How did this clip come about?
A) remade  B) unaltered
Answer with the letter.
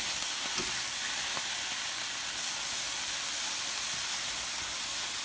B